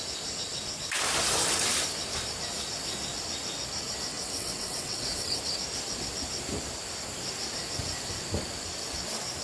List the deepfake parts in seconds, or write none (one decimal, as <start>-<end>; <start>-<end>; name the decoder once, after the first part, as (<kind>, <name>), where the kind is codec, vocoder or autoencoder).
4.1-5.4 (vocoder, WaveNeXt)